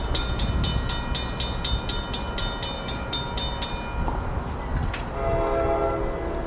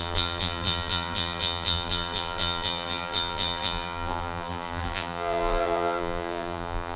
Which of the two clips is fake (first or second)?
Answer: second